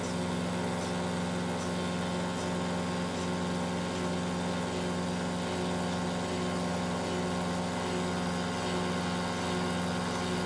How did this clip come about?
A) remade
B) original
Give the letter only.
B